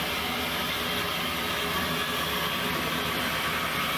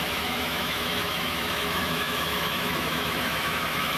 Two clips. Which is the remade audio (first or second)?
second